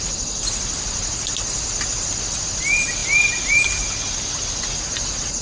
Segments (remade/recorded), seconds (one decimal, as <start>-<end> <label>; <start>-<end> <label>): 0.0-5.4 recorded